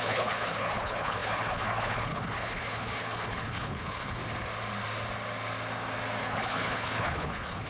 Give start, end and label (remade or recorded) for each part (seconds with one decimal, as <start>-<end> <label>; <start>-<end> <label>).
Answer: 0.0-4.2 remade; 4.2-6.2 recorded; 6.2-7.7 remade